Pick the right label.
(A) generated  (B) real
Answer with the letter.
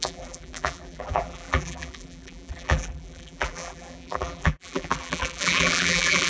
A